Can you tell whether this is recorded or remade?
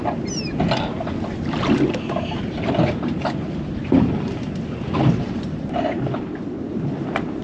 recorded